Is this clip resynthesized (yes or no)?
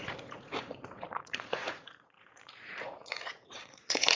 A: yes